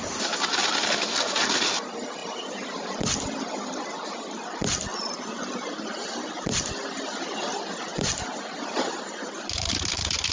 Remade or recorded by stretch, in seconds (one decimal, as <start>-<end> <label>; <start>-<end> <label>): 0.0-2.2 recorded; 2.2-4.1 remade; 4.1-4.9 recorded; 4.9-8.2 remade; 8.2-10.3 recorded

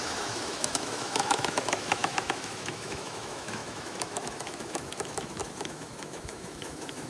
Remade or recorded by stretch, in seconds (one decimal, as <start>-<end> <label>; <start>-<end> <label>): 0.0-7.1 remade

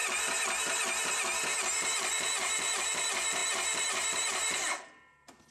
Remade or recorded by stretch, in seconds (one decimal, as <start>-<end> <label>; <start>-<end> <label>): 0.0-5.5 recorded